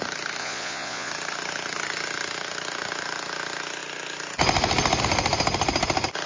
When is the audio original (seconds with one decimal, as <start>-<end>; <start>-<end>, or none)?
0.0-0.4; 1.1-6.3